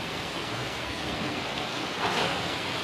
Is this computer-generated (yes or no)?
yes